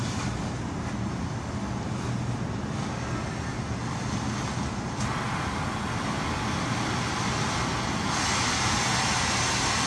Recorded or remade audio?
recorded